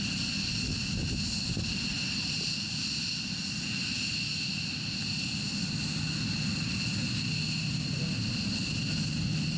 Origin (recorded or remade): recorded